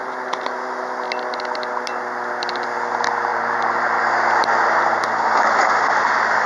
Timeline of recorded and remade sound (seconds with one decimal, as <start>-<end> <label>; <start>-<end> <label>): 0.0-3.3 recorded; 3.3-4.0 remade; 4.0-6.5 recorded